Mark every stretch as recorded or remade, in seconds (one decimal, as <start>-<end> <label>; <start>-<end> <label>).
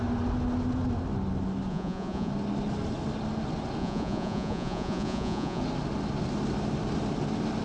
0.0-1.7 recorded; 1.7-2.3 remade; 2.3-3.8 recorded; 3.8-5.6 remade; 5.6-7.6 recorded